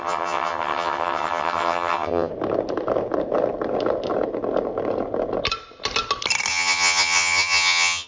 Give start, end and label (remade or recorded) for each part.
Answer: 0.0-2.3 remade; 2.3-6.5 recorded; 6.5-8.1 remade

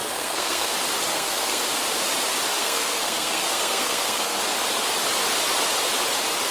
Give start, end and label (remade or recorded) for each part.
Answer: 0.0-0.7 remade; 0.7-1.1 recorded; 1.1-1.6 remade; 1.6-2.6 recorded; 2.6-4.4 remade; 4.4-6.5 recorded

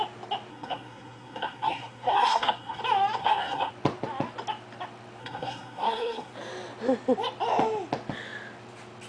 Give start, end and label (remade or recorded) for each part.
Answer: 0.0-0.5 recorded; 0.5-2.8 remade; 2.8-3.2 recorded; 3.2-3.7 remade; 3.7-5.2 recorded; 5.2-6.3 remade; 6.3-9.1 recorded